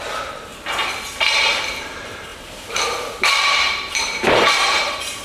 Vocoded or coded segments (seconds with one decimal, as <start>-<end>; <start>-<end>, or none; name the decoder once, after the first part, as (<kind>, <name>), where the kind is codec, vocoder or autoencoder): 0.0-0.5 (vocoder, BigVGAN v2); 1.6-5.2